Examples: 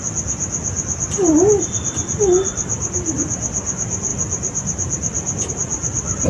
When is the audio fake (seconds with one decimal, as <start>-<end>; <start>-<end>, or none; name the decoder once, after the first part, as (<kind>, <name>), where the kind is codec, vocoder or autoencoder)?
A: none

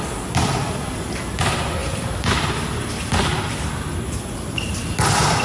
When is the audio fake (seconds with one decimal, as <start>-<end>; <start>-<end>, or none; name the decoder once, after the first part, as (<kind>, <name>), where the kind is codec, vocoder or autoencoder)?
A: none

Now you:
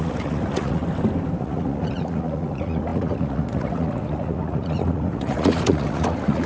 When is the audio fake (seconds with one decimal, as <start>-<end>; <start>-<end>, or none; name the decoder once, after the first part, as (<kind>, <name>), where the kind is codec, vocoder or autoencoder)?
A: 0.0-0.8 (vocoder, Vocos); 1.4-6.5